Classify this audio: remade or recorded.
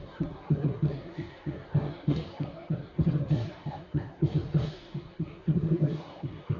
remade